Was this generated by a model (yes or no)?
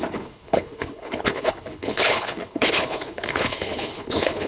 yes